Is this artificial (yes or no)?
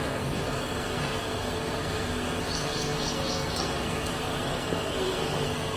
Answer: yes